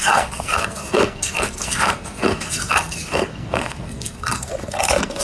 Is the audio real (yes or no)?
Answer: no